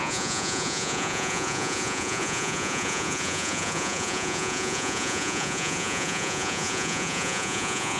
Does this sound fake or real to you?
fake